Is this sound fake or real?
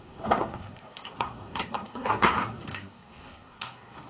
fake